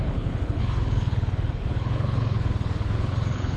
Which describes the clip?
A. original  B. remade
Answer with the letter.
B